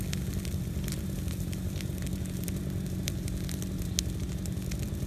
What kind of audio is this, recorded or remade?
recorded